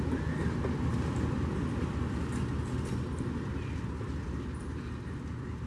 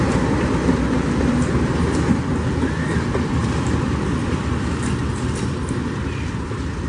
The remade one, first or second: second